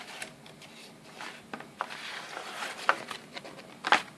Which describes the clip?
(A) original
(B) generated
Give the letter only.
A